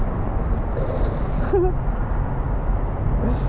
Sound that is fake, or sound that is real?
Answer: real